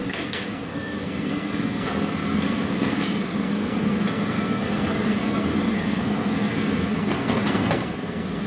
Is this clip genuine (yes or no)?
no